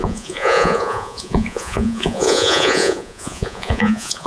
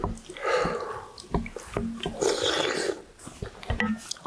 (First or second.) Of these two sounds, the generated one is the first